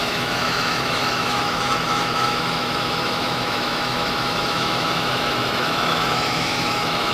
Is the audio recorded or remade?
remade